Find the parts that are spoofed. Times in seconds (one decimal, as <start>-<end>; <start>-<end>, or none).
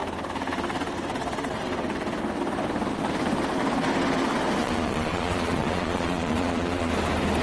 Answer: 4.6-6.9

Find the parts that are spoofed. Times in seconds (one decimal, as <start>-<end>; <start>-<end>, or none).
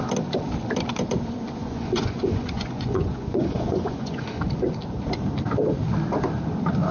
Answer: 1.6-4.4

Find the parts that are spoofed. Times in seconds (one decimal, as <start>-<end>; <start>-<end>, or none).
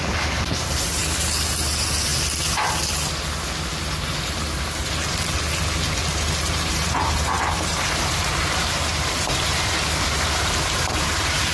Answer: 0.0-1.0; 1.6-2.1; 6.5-11.5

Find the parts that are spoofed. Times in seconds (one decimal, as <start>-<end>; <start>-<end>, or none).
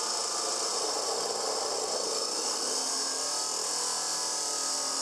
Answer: none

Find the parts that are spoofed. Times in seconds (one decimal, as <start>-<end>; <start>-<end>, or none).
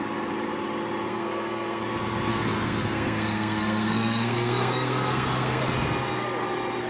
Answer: 1.1-1.8; 2.3-5.6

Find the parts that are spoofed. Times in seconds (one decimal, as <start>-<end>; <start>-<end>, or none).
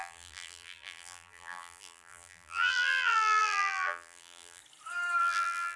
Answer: 0.0-4.6; 5.2-5.8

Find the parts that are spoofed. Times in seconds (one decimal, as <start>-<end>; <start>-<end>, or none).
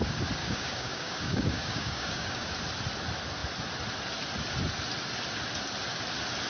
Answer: 0.4-2.5